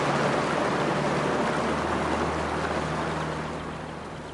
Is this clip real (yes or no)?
yes